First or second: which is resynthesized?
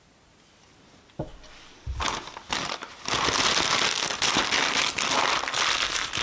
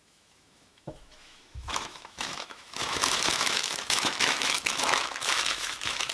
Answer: second